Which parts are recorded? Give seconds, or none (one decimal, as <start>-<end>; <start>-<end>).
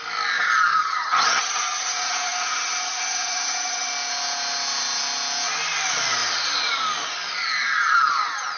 0.0-0.7; 3.9-8.6